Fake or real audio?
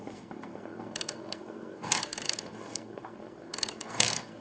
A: fake